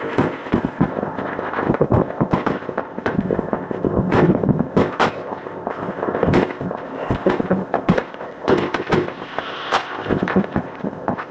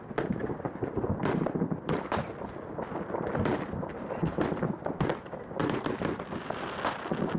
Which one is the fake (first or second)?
first